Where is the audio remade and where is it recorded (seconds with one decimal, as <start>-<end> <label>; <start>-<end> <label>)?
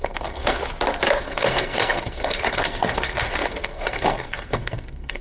0.0-0.6 remade; 0.6-1.2 recorded; 1.2-5.2 remade